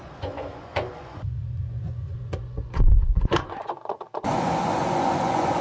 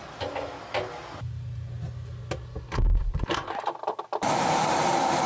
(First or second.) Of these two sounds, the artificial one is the first